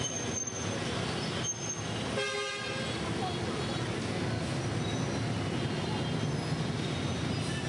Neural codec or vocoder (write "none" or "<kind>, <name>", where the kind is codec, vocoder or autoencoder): none